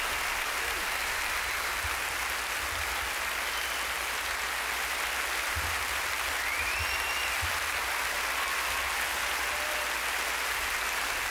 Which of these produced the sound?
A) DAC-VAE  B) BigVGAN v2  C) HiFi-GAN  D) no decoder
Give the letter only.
D